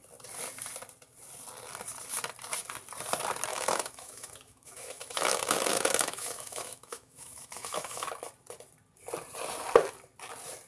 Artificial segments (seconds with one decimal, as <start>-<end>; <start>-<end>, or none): 3.5-8.1